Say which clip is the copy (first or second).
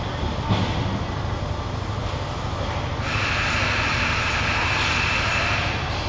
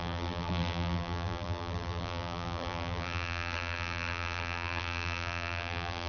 second